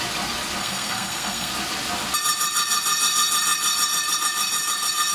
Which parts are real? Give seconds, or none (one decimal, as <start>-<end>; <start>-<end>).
0.0-0.6; 1.5-5.1